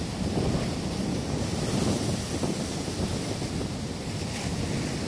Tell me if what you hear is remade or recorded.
recorded